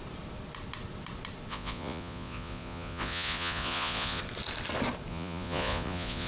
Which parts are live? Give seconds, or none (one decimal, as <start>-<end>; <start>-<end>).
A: 0.0-1.5; 4.2-5.1